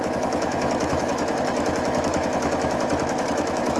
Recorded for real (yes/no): no